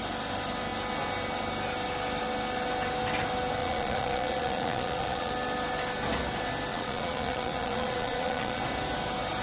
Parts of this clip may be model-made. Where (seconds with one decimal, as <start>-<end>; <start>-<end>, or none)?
3.6-5.3; 6.7-8.6